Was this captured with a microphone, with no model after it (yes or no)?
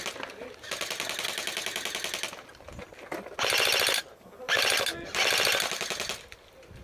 yes